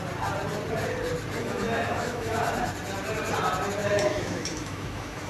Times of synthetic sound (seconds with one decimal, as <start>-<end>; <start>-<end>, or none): 1.4-2.4; 3.8-5.3